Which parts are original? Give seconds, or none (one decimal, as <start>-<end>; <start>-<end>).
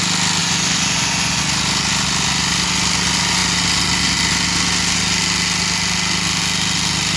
0.0-0.4; 1.4-7.2